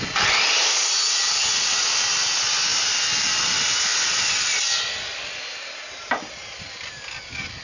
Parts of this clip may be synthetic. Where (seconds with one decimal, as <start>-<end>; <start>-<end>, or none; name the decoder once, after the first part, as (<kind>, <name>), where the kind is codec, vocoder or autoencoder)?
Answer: 0.8-1.5 (vocoder, BigVGAN v2); 2.7-3.4